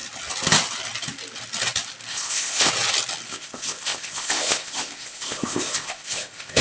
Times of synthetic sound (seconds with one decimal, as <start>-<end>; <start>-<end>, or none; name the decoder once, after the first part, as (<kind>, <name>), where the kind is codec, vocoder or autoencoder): 2.1-2.7 (codec, ZipCodec); 3.3-6.6